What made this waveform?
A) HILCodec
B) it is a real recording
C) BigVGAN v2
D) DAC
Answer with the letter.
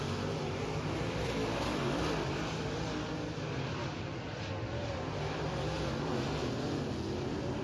B